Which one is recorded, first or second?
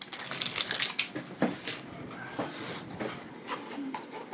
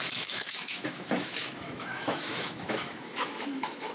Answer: first